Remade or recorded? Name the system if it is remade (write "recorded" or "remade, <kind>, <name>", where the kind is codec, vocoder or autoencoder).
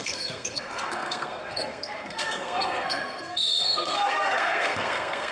remade, codec, SNAC